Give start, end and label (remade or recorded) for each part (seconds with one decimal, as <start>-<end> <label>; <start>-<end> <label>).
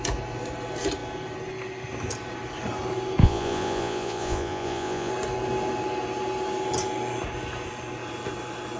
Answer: 0.0-3.2 recorded; 3.2-5.1 remade; 5.1-8.8 recorded